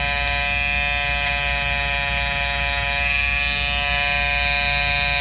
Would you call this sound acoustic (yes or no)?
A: yes